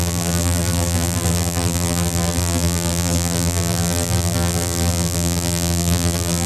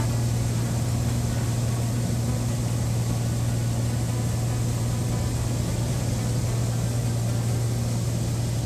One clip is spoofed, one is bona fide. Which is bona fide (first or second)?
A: second